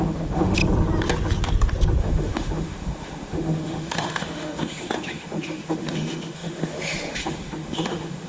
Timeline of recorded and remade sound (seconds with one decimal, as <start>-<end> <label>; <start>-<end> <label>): 0.0-0.6 remade; 0.6-2.0 recorded; 2.0-8.3 remade